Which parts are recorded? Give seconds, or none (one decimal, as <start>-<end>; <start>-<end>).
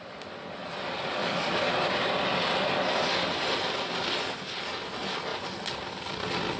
0.0-1.2; 1.9-5.3; 5.8-6.6